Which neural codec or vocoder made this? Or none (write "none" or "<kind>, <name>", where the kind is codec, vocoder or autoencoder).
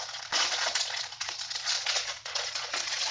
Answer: vocoder, Vocos